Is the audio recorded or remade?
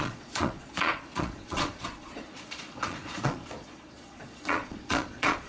remade